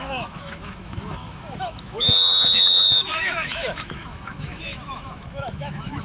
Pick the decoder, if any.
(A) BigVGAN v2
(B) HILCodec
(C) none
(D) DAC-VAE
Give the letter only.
D